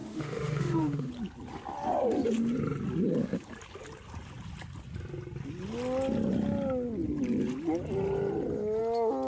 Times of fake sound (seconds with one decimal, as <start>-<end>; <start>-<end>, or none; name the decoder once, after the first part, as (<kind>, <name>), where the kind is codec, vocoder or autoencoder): 0.0-1.1 (autoencoder, DAC-VAE)